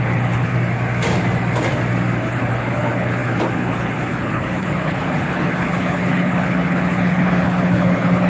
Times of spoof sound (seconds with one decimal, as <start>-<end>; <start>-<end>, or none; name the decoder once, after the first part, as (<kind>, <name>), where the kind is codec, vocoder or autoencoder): 0.0-0.5 (codec, HILCodec); 2.2-8.3